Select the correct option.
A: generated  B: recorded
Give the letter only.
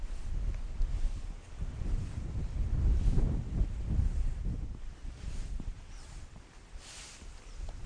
B